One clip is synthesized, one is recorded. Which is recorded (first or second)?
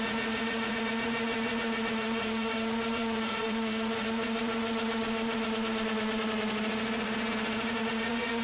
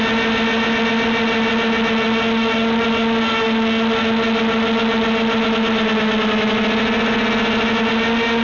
second